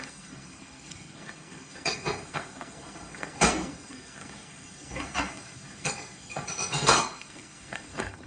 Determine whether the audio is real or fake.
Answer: fake